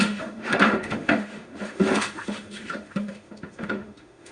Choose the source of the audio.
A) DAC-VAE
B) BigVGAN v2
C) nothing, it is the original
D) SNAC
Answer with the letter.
A